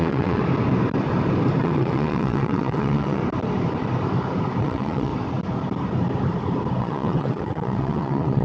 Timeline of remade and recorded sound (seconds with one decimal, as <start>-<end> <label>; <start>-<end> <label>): 0.0-0.4 remade; 0.4-1.6 recorded; 1.6-3.2 remade; 3.2-4.6 recorded; 4.6-5.1 remade; 5.1-6.8 recorded; 6.8-8.4 remade